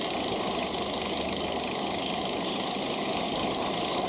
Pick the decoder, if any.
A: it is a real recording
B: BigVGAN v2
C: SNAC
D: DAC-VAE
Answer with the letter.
A